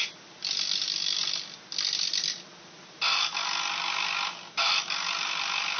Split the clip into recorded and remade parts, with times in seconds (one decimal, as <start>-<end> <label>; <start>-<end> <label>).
0.0-5.8 recorded